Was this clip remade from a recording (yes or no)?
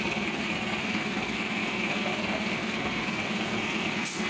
yes